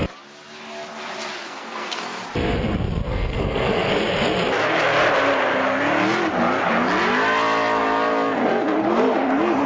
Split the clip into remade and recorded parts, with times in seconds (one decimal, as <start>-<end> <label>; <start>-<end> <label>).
0.0-1.4 recorded; 1.4-2.2 remade; 2.2-3.1 recorded; 3.1-3.9 remade; 3.9-9.7 recorded